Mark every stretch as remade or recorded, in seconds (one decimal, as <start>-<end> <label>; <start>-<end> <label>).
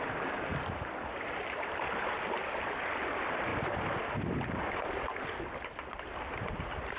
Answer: 0.0-0.5 remade; 0.5-2.5 recorded; 2.5-3.5 remade; 3.5-5.9 recorded; 5.9-7.0 remade